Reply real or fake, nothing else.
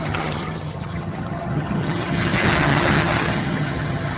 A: fake